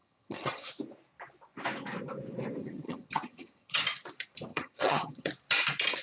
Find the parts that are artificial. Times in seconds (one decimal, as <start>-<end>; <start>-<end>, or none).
0.0-0.7; 2.6-3.8; 4.5-5.3